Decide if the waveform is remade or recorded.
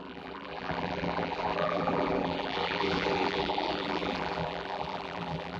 remade